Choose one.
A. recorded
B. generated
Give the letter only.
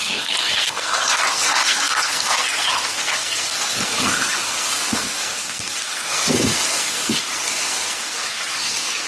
B